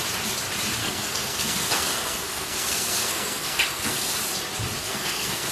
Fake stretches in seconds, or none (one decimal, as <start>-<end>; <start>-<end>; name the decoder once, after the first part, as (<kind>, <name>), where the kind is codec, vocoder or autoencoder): 0.8-4.1 (codec, SNAC); 4.8-5.5